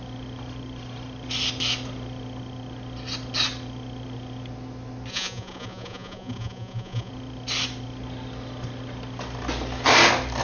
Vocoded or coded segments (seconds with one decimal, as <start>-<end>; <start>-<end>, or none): 5.1-7.1